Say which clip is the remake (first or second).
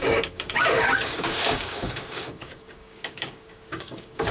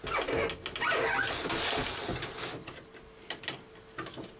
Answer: first